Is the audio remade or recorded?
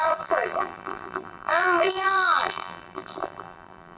remade